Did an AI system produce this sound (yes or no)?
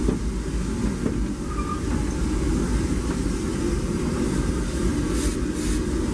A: no